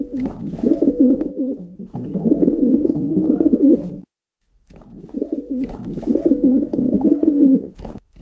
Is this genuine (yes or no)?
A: no